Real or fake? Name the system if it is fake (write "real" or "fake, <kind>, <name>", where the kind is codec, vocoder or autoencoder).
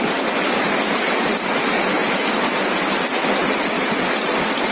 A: fake, vocoder, BigVGAN v2